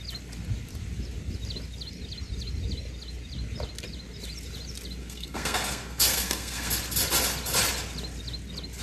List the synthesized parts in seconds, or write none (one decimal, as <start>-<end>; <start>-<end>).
5.0-6.7